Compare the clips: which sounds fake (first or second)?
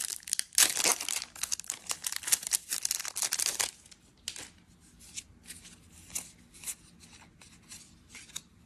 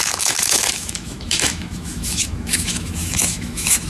second